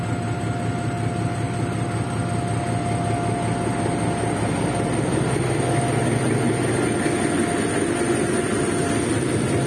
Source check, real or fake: real